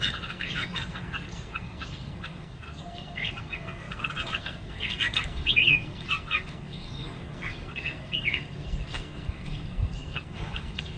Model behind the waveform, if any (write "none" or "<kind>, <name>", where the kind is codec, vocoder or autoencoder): codec, SNAC